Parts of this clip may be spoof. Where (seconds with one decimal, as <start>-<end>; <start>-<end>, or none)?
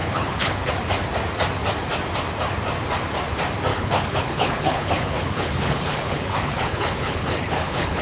0.0-0.7; 3.7-8.0